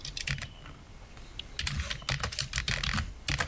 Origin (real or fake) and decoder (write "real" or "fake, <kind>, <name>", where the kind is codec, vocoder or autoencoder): real